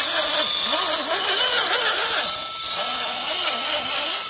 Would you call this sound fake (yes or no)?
no